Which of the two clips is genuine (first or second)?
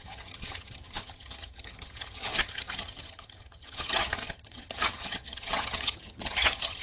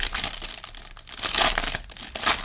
second